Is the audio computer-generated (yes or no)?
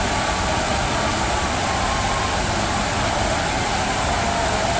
no